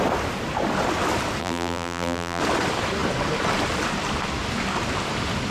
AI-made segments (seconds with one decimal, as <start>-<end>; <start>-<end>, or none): 1.4-2.4